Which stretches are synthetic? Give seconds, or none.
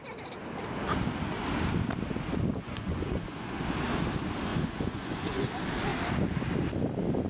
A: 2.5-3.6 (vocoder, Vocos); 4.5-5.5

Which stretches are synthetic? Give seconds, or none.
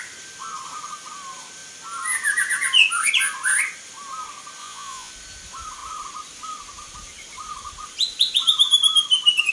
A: 4.6-5.1 (vocoder, Vocos)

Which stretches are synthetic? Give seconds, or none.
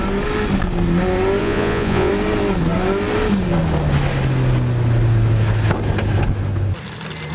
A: 1.4-2.1 (vocoder, Vocos)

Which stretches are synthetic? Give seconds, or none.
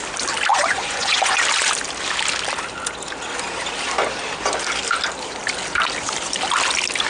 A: 0.5-1.4 (vocoder, Vocos)